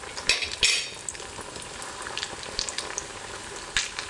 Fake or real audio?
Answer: real